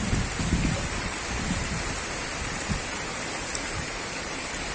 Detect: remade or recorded recorded